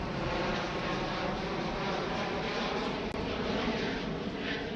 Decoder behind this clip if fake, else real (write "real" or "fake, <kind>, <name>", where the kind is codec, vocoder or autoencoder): real